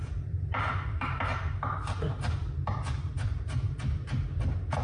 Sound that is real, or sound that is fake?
fake